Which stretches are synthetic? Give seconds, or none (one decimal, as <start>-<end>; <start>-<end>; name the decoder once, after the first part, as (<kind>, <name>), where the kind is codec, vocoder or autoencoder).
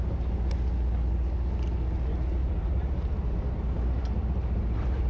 2.4-5.1 (vocoder, BigVGAN v2)